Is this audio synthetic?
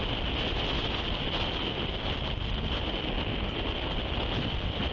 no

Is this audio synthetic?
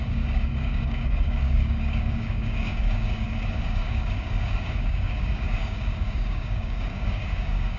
yes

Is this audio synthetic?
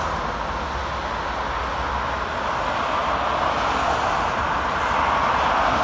no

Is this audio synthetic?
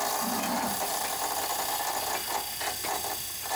no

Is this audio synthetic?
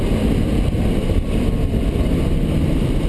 no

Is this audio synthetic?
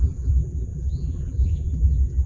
yes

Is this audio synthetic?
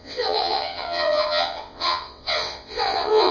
yes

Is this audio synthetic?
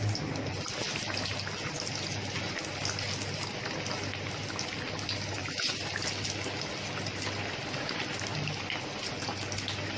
no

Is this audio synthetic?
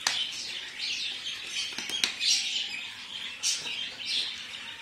no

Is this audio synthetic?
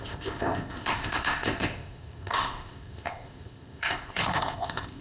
yes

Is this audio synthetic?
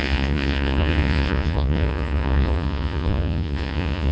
yes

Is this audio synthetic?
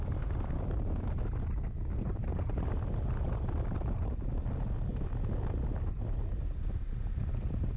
no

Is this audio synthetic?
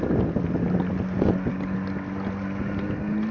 no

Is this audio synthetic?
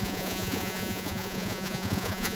yes